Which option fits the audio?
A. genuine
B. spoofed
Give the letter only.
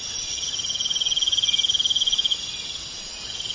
A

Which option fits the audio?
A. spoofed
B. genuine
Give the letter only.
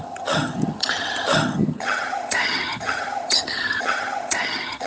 A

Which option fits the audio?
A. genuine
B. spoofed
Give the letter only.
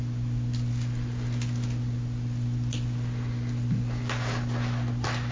A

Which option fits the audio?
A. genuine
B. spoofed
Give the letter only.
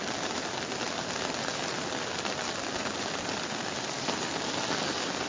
A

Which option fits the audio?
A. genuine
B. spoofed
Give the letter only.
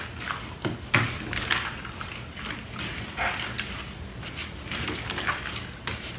A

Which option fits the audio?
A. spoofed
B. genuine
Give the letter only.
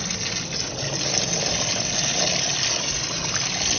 B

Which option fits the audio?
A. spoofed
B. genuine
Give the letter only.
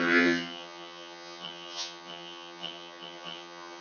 A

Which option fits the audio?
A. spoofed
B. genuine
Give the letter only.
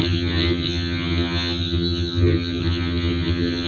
A